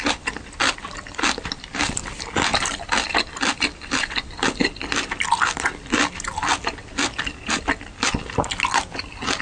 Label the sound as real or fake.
real